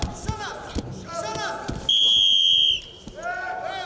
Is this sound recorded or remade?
recorded